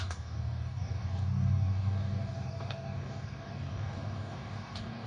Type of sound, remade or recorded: remade